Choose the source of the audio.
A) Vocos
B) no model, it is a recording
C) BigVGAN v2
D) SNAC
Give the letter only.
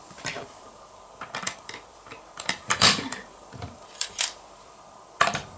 C